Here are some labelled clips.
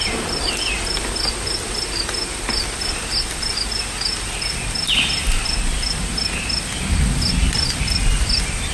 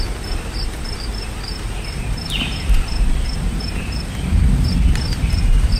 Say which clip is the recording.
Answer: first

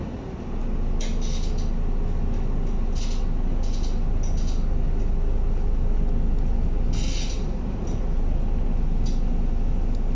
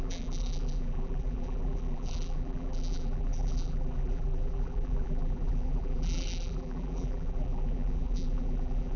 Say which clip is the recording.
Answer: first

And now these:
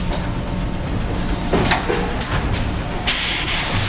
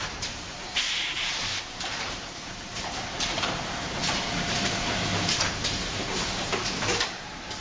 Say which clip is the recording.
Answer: first